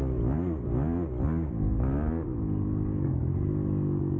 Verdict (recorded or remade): recorded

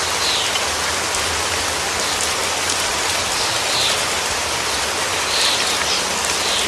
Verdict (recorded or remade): recorded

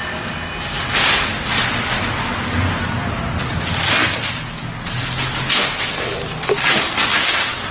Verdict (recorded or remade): recorded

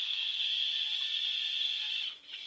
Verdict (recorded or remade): remade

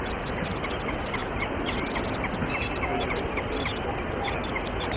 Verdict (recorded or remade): recorded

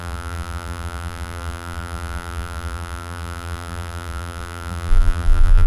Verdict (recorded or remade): remade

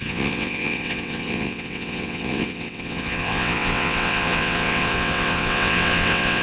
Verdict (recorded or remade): remade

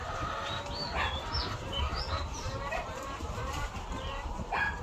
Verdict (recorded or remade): remade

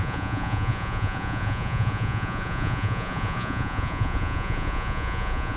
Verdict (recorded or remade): remade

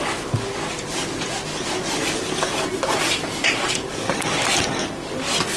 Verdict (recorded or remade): recorded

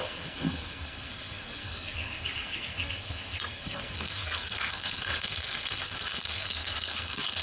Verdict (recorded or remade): remade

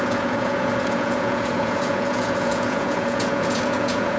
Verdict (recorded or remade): remade